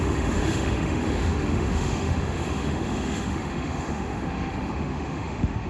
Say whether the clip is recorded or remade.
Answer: remade